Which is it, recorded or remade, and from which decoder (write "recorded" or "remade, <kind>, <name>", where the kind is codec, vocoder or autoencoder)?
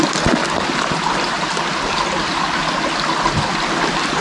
recorded